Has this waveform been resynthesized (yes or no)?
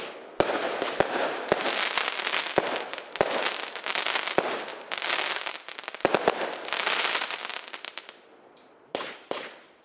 no